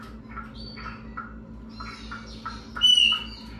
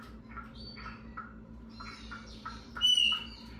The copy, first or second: second